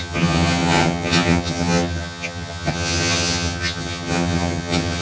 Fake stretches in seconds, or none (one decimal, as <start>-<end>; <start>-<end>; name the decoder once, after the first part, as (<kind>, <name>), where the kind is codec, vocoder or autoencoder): 0.0-5.0 (vocoder, HiFi-GAN)